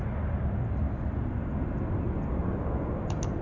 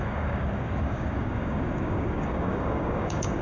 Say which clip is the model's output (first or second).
second